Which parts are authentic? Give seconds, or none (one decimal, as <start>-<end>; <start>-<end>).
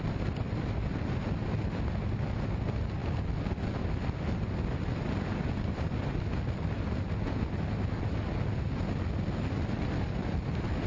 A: 0.0-10.9